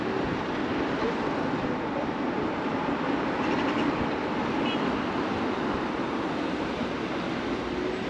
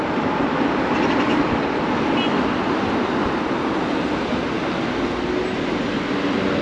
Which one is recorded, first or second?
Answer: second